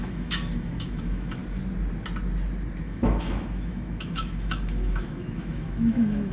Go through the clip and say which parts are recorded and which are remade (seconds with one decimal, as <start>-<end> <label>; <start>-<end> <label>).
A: 0.0-1.4 remade; 1.4-2.8 recorded; 2.8-6.3 remade